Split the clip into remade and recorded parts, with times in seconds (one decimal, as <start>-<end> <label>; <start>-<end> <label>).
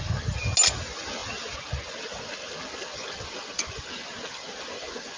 0.0-5.2 recorded